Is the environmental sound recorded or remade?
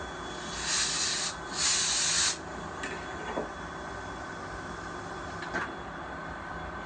recorded